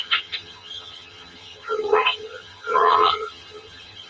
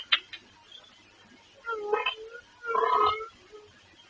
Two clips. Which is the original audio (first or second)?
second